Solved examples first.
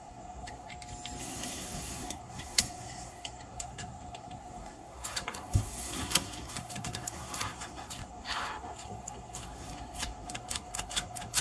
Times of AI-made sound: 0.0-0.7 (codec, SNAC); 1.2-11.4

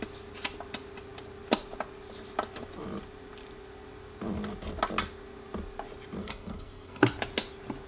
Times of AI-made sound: 6.2-7.1 (codec, SNAC)

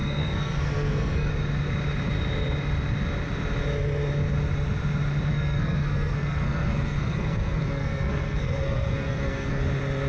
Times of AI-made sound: 0.0-1.3 (codec, SNAC); 5.3-9.6